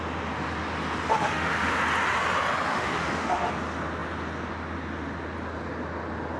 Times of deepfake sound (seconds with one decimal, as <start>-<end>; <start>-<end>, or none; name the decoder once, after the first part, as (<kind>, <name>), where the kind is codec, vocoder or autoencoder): 1.1-1.8 (autoencoder, DAC-VAE); 2.7-3.5